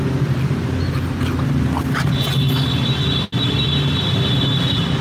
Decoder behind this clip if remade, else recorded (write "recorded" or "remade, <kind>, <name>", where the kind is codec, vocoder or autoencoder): recorded